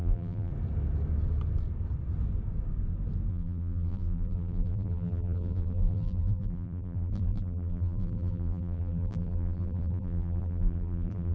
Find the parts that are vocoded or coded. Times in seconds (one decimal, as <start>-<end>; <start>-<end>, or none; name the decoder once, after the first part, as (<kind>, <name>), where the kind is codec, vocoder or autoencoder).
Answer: 0.0-0.5 (vocoder, BigVGAN v2); 3.3-11.3